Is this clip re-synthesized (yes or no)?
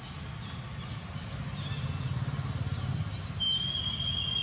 no